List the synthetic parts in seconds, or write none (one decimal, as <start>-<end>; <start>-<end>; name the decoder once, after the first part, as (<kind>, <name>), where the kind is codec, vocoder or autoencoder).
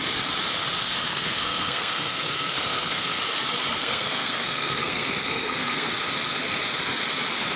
0.8-3.2 (codec, SNAC); 3.8-5.9